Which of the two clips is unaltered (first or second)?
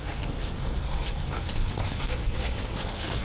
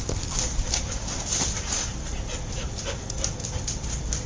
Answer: second